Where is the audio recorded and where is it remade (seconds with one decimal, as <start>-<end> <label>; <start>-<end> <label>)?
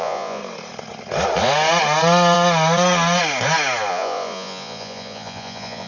0.0-0.4 remade; 0.4-3.9 recorded; 3.9-5.9 remade